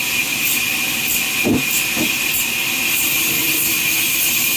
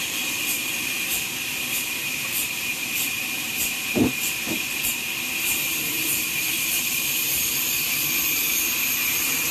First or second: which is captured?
first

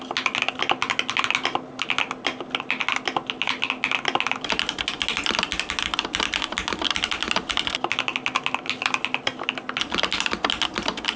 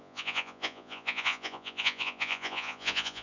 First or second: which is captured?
first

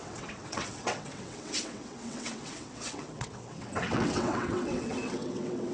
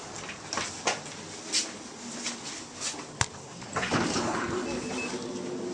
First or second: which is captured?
second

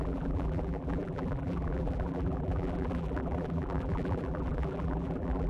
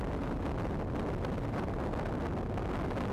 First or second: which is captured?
second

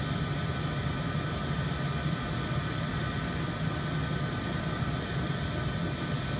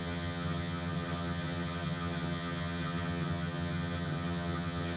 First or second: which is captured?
first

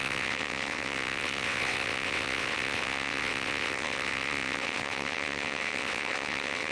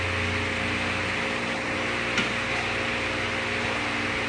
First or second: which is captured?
second